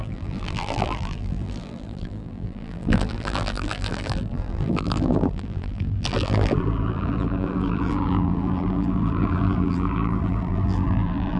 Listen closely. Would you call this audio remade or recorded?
remade